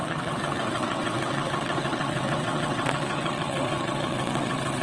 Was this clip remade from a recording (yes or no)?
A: yes